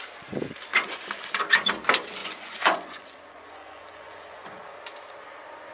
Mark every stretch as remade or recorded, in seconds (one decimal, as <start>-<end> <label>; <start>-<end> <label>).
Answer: 0.0-0.7 recorded; 0.7-1.4 remade; 1.4-2.2 recorded; 2.2-4.8 remade; 4.8-5.7 recorded